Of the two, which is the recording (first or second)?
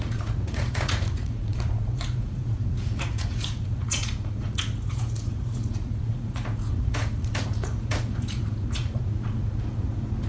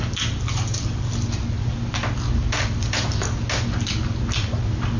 second